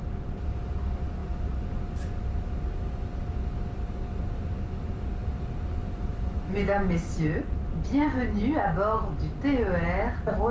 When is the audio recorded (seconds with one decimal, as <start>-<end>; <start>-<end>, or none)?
0.0-5.2; 8.4-10.5